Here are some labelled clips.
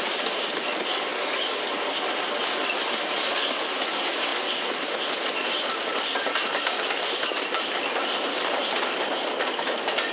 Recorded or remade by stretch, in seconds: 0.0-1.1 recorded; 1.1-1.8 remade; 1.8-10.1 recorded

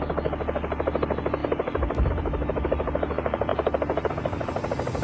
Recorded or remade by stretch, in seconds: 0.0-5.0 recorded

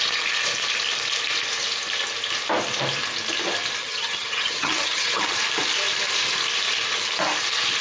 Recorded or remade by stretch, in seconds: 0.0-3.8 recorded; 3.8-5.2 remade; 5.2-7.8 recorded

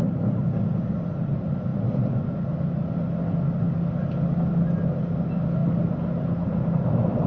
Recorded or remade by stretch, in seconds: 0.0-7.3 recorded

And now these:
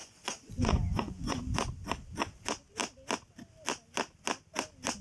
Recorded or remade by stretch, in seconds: 0.0-1.4 remade; 1.4-5.0 recorded

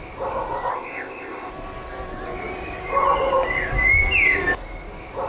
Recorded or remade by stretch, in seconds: 0.0-0.7 recorded; 0.7-1.5 remade; 1.5-5.3 recorded

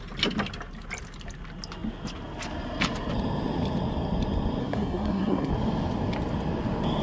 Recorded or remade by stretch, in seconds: 0.0-4.6 recorded; 4.6-5.5 remade; 5.5-7.0 recorded